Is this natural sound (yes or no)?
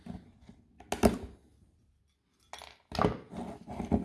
yes